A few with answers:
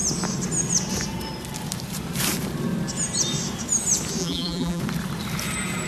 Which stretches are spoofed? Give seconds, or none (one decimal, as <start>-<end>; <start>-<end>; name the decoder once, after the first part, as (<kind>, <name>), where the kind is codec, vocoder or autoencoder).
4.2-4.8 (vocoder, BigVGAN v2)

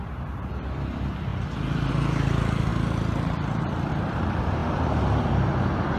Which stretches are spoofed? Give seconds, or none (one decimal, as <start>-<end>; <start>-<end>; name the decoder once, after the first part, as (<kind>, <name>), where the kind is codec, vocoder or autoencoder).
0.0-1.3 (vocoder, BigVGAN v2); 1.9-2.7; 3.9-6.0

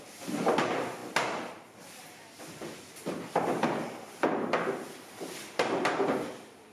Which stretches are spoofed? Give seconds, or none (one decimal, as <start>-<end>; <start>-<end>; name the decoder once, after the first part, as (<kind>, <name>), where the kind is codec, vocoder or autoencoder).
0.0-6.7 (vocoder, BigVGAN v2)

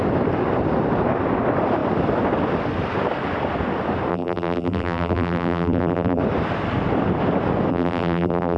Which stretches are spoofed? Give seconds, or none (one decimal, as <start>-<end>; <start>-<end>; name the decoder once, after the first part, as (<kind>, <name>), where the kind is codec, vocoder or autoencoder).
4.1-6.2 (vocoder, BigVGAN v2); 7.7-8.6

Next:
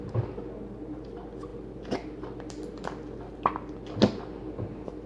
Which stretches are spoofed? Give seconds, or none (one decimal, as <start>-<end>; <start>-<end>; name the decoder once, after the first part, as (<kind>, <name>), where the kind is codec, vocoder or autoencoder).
1.5-3.5 (vocoder, BigVGAN v2)

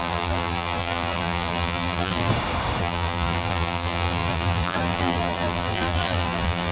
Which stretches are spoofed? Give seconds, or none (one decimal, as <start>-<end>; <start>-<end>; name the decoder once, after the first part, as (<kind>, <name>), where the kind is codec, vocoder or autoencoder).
0.0-2.3 (vocoder, BigVGAN v2); 2.8-6.7

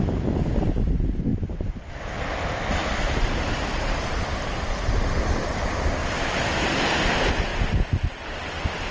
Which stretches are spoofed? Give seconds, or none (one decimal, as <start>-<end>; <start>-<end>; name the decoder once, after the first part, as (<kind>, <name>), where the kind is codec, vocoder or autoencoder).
1.3-1.9 (vocoder, BigVGAN v2); 2.8-4.2; 6.0-7.1

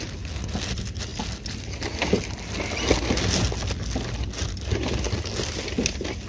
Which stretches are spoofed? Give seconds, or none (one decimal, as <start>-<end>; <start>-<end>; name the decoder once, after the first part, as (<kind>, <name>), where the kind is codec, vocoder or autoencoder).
none